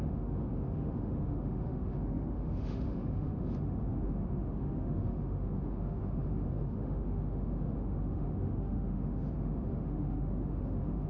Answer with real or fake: fake